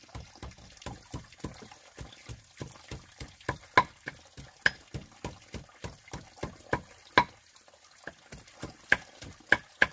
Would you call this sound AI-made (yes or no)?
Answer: no